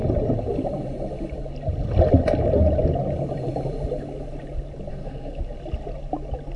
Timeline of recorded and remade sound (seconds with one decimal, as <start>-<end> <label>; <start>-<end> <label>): 0.0-4.9 recorded; 4.9-5.4 remade; 5.4-6.6 recorded